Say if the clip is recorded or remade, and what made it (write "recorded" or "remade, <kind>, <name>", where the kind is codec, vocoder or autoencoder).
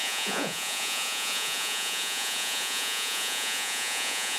remade, vocoder, Vocos